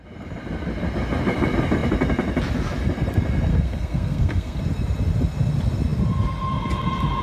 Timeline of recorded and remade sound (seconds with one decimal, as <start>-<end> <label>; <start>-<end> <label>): 0.0-3.5 recorded; 3.5-4.6 remade; 4.6-7.2 recorded